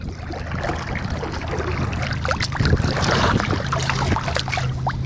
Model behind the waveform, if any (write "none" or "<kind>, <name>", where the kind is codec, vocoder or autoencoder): none